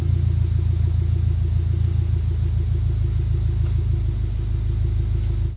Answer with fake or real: real